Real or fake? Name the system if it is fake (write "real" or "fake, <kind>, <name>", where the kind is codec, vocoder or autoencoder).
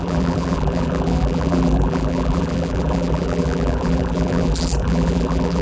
fake, vocoder, BigVGAN v2